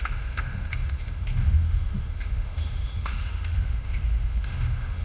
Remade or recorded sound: remade